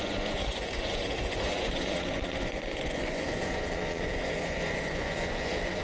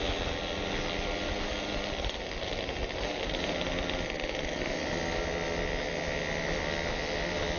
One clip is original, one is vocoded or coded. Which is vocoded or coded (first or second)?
first